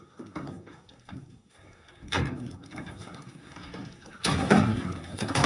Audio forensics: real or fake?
fake